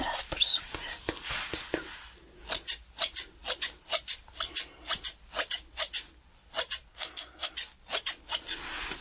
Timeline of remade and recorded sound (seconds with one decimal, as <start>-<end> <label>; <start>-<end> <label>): 0.0-6.9 recorded; 6.9-7.5 remade; 7.5-9.0 recorded